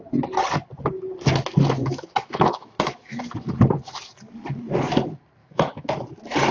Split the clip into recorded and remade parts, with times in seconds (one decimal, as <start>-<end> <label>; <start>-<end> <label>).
0.0-1.8 recorded; 1.8-3.2 remade; 3.2-5.4 recorded; 5.4-5.9 remade; 5.9-6.5 recorded